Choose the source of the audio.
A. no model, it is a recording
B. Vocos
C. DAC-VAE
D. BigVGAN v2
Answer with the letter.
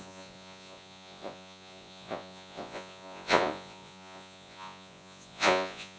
B